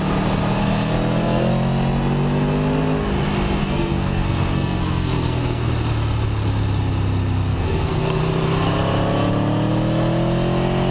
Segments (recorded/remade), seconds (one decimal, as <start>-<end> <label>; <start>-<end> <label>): 0.0-0.6 recorded; 0.6-1.5 remade; 1.5-3.6 recorded; 3.6-5.7 remade; 5.7-7.5 recorded; 7.5-8.2 remade; 8.2-10.9 recorded